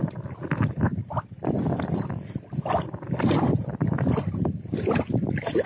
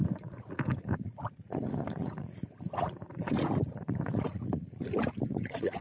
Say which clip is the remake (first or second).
second